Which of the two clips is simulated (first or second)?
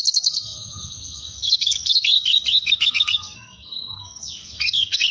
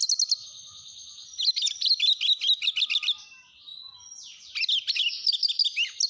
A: first